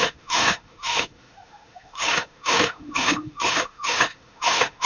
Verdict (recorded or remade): remade